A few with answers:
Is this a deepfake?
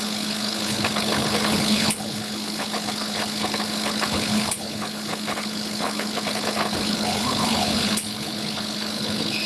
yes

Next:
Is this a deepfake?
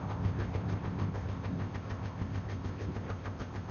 yes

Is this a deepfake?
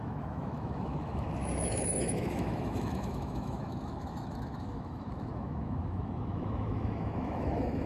yes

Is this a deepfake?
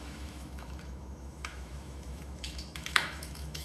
yes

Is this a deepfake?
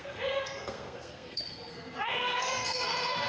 yes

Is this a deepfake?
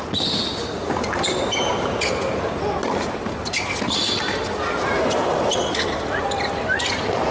no